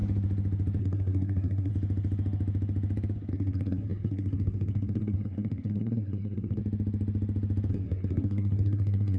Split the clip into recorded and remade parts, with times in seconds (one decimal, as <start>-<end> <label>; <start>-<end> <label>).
0.0-0.8 recorded; 0.8-1.7 remade; 1.7-3.3 recorded; 3.3-6.6 remade; 6.6-7.7 recorded; 7.7-9.2 remade